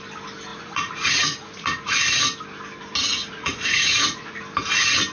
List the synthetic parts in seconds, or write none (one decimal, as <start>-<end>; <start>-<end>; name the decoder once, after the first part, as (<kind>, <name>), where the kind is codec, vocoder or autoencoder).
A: 0.5-1.9 (vocoder, Vocos); 3.0-4.4